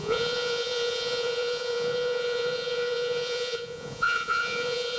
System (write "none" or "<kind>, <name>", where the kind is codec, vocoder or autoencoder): vocoder, Vocos